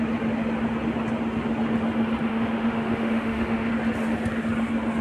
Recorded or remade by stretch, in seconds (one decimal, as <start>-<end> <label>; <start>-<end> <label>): 0.0-2.3 recorded; 2.3-3.7 remade; 3.7-5.0 recorded